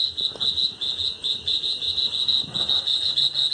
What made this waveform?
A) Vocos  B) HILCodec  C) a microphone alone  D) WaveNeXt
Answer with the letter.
C